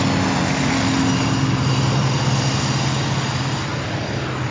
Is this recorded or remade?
recorded